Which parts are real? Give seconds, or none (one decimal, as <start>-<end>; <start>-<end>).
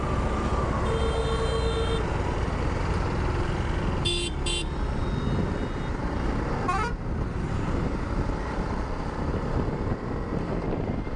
0.0-11.2